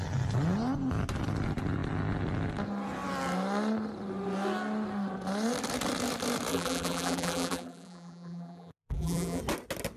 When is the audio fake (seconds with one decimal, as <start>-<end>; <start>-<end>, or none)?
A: 6.5-9.4